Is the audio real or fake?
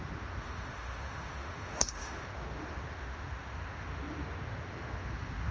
fake